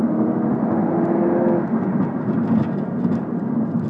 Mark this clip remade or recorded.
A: recorded